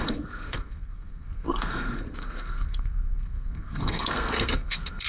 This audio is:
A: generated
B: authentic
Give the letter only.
A